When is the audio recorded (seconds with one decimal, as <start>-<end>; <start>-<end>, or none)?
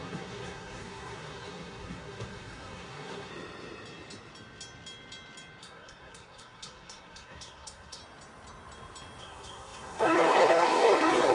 3.3-5.6; 8.0-9.2